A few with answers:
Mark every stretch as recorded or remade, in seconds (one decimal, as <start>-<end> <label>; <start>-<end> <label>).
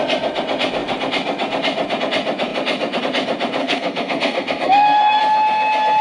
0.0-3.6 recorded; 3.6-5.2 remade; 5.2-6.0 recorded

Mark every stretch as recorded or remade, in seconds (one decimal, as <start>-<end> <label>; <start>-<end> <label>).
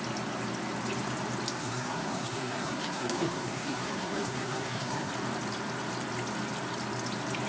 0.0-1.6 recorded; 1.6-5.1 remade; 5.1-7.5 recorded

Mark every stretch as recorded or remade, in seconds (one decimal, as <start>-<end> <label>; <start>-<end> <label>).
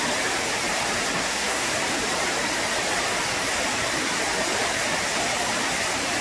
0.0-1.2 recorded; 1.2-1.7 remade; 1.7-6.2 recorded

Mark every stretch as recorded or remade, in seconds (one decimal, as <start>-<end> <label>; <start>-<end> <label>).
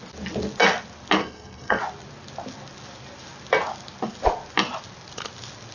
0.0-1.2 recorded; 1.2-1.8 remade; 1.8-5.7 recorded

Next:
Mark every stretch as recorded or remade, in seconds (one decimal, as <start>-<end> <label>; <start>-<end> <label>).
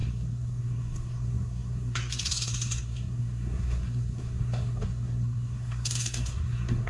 0.0-6.9 remade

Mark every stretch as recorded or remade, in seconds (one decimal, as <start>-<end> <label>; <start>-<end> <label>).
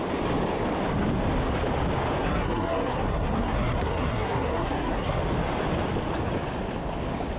0.0-2.2 recorded; 2.2-5.2 remade; 5.2-7.4 recorded